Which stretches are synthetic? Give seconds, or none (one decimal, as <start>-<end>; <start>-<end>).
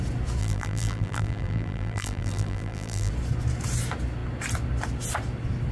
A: 0.4-3.1